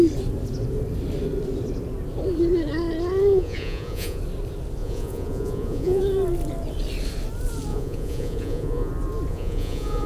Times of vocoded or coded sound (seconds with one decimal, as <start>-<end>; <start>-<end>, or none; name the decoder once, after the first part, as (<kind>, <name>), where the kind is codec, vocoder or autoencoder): 3.3-4.2 (vocoder, Vocos); 4.8-6.0; 7.7-8.9; 9.3-10.1